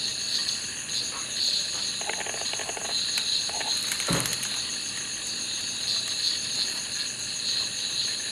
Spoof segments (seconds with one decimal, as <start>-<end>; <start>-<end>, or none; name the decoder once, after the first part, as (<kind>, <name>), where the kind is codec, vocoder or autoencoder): none